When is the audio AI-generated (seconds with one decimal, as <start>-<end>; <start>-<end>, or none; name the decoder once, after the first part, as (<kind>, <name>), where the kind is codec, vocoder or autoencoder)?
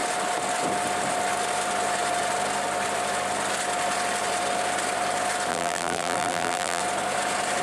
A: 5.5-6.8 (vocoder, BigVGAN v2)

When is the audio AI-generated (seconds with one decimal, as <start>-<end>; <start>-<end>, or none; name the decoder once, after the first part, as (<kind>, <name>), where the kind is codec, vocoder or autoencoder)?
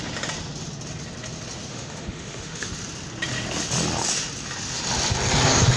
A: 1.7-2.7 (autoencoder, DAC-VAE)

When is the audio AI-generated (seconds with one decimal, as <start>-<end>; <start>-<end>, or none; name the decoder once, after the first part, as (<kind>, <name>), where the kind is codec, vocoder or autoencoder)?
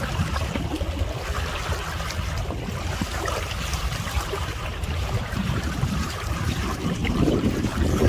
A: 0.0-0.7 (vocoder, BigVGAN v2); 2.8-8.1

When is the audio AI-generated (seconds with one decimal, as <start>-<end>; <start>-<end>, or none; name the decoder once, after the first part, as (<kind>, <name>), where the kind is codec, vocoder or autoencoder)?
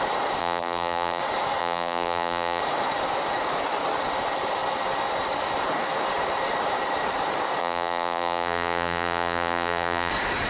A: 0.4-1.2 (vocoder, BigVGAN v2); 1.6-2.6; 7.6-10.1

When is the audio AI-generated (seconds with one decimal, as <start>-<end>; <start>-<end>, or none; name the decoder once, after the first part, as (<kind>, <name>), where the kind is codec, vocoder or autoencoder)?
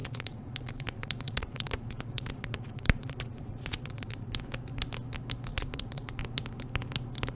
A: 0.0-4.4 (vocoder, Vocos); 5.5-6.2